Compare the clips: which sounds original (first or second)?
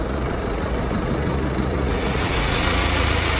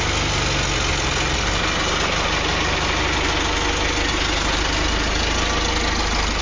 second